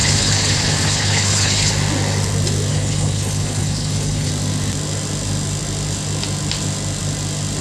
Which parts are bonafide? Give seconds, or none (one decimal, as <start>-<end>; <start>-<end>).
1.7-2.7; 4.3-7.6